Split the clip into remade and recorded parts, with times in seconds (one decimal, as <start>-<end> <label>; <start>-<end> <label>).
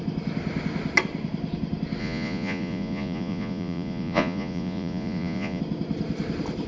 0.0-2.0 recorded; 2.0-5.6 remade; 5.6-6.7 recorded